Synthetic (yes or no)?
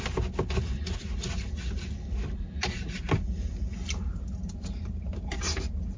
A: no